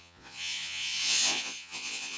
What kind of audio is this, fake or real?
fake